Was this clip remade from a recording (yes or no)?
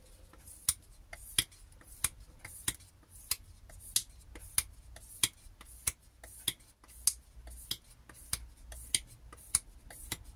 no